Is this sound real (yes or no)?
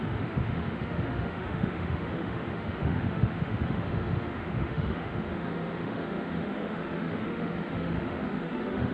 no